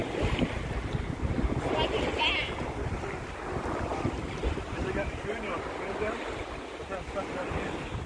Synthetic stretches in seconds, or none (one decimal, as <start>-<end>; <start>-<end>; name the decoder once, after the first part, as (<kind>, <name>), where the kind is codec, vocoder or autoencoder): 3.9-5.3 (vocoder, BigVGAN v2)